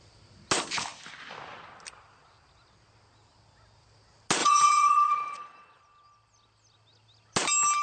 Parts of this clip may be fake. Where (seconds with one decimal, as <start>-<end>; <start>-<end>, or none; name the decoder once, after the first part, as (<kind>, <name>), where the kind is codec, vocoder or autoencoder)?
4.4-5.8 (vocoder, Vocos)